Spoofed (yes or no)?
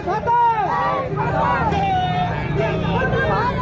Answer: no